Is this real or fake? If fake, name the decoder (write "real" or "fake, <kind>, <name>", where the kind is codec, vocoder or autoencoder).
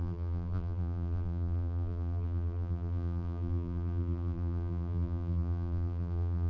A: fake, vocoder, BigVGAN v2